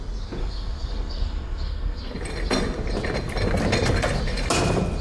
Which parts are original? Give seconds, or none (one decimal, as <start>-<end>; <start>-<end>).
0.0-0.4; 2.0-5.0